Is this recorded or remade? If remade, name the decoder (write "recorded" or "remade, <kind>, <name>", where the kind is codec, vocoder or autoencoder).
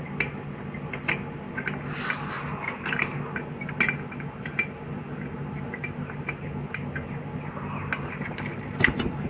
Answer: recorded